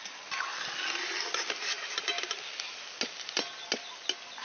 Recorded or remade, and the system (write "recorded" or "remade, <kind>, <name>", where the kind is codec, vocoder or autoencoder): recorded